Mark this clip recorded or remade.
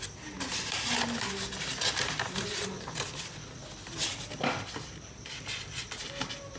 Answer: recorded